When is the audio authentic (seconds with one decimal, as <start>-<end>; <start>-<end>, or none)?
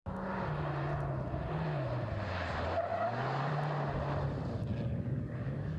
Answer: 0.0-2.9; 3.5-4.9